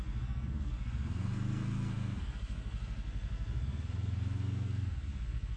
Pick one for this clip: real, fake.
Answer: fake